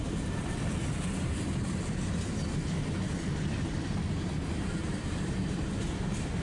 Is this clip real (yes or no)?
yes